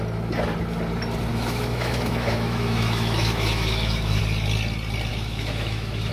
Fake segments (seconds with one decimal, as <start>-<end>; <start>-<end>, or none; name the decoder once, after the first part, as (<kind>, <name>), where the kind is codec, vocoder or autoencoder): 1.3-4.2 (autoencoder, DAC-VAE); 5.1-6.1